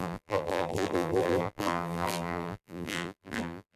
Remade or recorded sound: remade